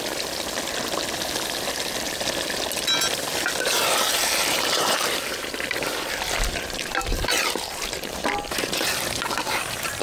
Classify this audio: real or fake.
real